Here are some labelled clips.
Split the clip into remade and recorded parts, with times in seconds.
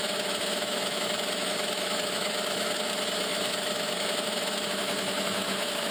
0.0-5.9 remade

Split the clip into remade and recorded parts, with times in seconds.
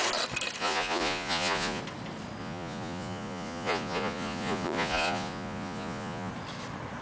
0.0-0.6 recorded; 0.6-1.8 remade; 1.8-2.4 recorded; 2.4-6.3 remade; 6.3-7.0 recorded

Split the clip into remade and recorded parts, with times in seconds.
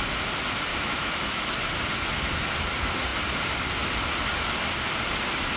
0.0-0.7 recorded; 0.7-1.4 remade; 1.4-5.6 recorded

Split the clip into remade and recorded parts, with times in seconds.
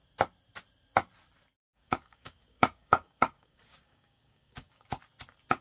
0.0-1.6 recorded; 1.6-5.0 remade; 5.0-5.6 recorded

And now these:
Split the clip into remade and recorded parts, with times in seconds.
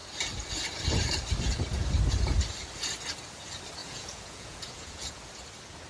0.0-3.8 recorded; 3.8-5.2 remade; 5.2-5.9 recorded